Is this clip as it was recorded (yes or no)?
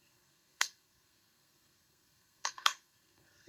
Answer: no